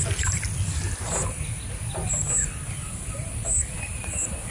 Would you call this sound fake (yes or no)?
no